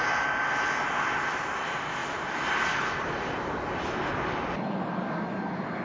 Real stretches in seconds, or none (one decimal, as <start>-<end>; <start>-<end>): 0.0-5.8